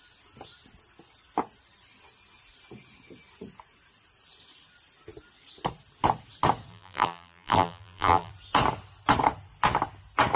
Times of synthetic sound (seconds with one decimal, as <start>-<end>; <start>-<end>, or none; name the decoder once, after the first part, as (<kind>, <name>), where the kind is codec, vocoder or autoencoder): 6.7-8.3 (vocoder, BigVGAN v2)